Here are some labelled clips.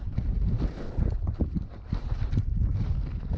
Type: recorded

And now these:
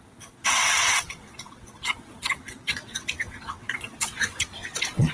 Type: remade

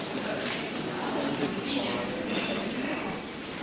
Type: recorded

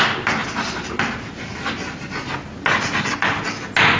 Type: recorded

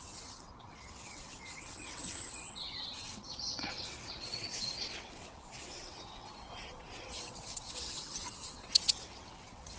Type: remade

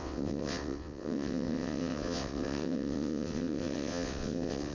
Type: remade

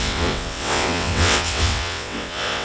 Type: remade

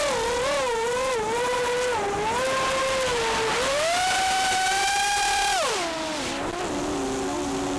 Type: recorded